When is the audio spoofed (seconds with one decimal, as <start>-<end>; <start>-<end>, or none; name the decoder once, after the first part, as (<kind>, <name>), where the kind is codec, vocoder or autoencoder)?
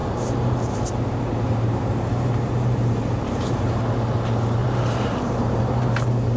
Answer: 0.0-3.8 (vocoder, BigVGAN v2); 4.6-6.4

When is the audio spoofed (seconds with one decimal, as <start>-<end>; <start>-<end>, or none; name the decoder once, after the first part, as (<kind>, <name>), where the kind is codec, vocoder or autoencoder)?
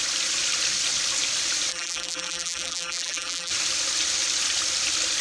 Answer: 1.7-3.5 (vocoder, BigVGAN v2)